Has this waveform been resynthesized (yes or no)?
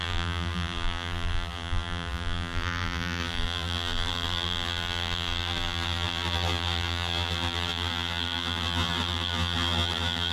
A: yes